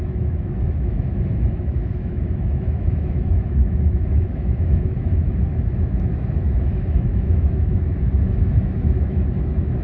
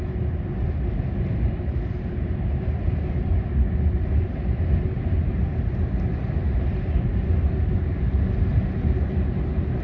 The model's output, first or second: first